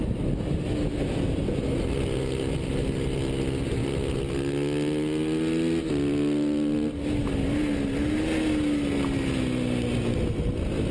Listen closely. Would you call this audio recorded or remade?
recorded